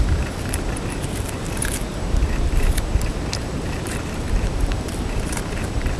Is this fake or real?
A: fake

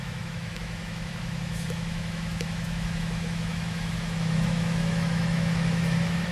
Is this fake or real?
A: fake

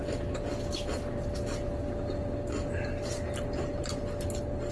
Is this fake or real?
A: real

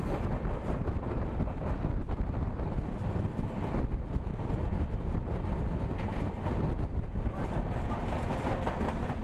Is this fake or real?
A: real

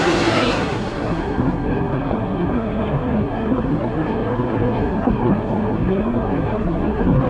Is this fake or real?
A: fake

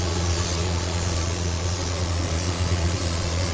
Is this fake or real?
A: fake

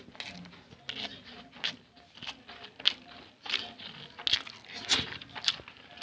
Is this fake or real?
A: real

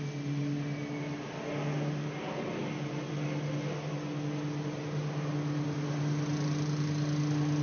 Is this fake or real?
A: real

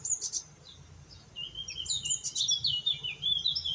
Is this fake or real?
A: real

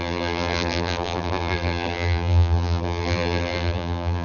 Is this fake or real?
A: fake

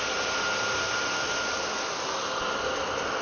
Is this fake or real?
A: real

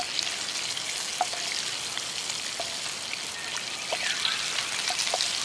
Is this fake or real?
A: real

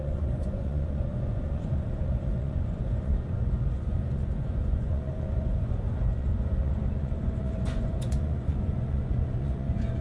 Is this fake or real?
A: fake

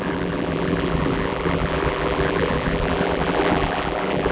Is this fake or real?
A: fake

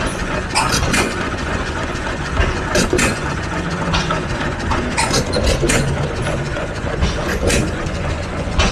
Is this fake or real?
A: fake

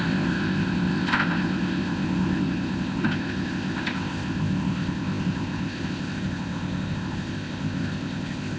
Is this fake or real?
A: fake